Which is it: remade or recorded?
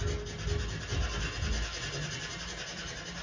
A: recorded